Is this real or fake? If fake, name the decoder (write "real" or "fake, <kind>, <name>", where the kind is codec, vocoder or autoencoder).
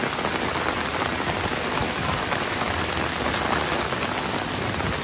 real